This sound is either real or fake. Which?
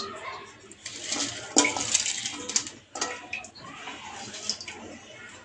real